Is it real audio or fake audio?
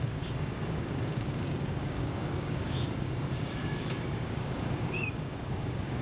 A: fake